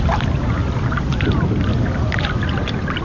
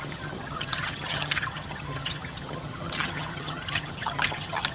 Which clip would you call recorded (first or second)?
first